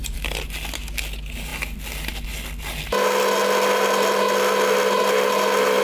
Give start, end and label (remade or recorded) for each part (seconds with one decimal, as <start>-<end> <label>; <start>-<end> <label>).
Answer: 0.0-0.5 remade; 0.5-5.8 recorded